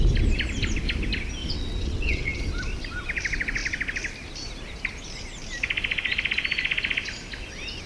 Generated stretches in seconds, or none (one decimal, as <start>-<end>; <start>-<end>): 1.4-2.5